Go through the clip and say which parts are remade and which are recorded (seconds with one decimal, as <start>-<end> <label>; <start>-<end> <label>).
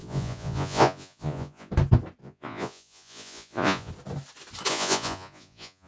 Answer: 0.0-1.7 remade; 1.7-2.2 recorded; 2.2-3.9 remade; 3.9-4.7 recorded; 4.7-5.9 remade